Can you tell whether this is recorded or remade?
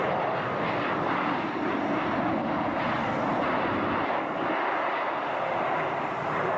recorded